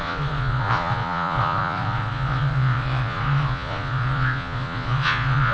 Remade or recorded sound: remade